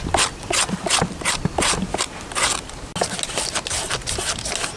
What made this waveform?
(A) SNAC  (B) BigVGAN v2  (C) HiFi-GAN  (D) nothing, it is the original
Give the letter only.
D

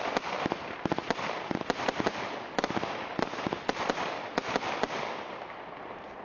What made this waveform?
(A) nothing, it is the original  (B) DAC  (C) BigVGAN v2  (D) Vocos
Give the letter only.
A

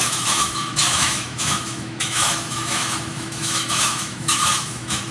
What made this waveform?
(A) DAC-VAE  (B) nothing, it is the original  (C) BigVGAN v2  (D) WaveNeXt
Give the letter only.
A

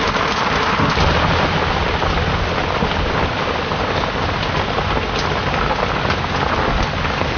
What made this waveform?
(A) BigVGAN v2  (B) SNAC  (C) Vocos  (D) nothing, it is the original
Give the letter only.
D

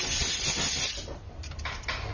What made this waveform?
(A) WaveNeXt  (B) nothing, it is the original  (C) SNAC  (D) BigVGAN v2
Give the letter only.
B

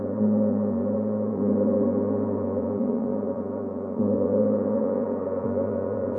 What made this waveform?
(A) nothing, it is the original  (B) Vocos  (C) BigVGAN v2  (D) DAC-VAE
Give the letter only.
B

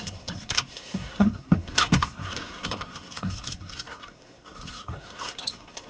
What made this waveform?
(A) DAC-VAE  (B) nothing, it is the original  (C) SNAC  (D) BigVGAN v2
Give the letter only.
C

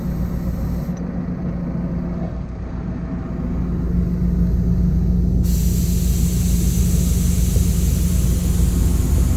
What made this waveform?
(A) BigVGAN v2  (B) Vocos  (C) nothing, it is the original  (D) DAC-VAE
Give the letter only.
C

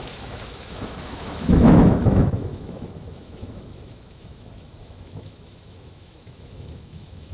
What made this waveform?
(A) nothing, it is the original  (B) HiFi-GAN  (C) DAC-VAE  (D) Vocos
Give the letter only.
C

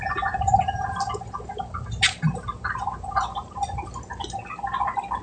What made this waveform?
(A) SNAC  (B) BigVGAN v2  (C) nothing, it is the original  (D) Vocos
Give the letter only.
C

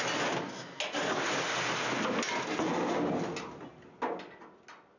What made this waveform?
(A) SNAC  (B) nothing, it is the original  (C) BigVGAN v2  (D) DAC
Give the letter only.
B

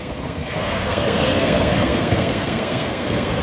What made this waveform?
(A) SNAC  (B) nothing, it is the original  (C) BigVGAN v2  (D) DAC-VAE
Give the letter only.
A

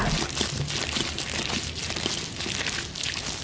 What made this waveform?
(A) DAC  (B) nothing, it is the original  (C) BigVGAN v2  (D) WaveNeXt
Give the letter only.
B